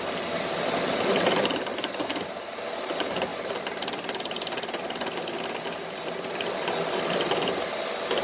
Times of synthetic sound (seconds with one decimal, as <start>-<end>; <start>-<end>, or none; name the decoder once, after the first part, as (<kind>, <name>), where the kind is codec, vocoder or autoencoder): none